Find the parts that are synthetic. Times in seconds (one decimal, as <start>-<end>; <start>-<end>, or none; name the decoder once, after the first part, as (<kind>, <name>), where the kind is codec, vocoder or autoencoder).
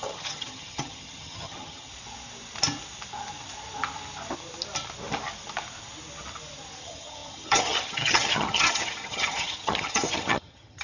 0.0-1.9 (vocoder, HiFi-GAN); 6.8-10.8